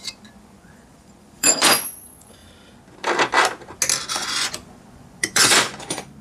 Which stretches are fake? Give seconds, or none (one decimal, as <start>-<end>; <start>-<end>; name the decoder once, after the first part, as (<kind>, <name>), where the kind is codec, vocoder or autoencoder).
0.0-2.4 (vocoder, Vocos); 4.1-6.2